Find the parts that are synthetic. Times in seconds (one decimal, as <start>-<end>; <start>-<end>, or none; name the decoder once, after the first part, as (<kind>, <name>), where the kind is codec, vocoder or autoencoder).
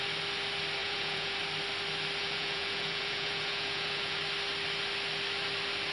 0.8-1.4 (vocoder, Vocos); 2.2-4.2